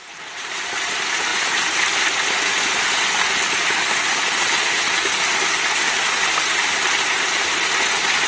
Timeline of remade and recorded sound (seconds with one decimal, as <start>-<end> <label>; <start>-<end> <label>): 0.0-8.3 recorded